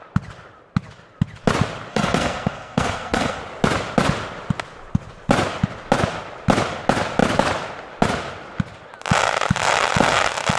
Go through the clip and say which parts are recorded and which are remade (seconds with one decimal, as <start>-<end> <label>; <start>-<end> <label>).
0.0-1.9 recorded; 1.9-3.4 remade; 3.4-10.6 recorded